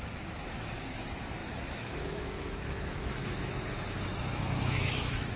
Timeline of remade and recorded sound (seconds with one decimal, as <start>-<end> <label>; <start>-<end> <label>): 0.0-5.4 remade